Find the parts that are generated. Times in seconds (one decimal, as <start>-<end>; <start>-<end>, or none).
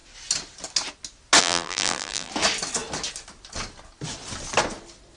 1.4-2.3